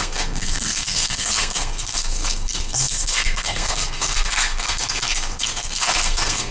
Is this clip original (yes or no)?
no